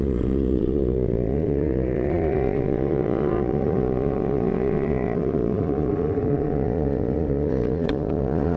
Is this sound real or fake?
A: fake